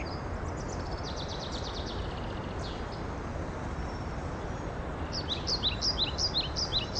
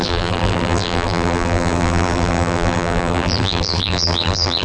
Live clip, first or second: first